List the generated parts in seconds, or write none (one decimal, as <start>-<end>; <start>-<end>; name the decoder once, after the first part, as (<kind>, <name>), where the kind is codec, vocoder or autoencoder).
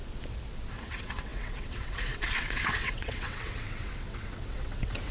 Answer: 0.7-5.1 (vocoder, WaveNeXt)